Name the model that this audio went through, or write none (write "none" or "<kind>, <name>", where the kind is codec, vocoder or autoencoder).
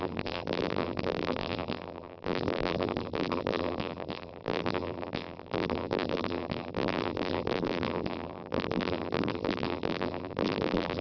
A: vocoder, BigVGAN v2